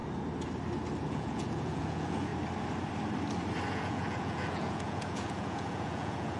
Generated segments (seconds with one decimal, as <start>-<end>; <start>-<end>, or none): 1.1-2.3; 3.7-6.4